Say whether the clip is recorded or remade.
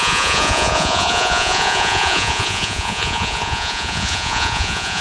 remade